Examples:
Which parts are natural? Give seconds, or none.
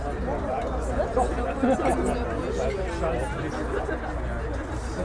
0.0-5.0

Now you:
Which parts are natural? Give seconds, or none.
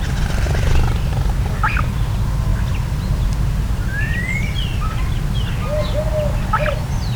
0.0-7.2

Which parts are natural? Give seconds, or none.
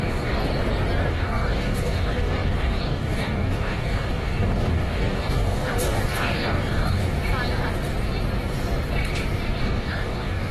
0.4-1.1; 7.0-9.6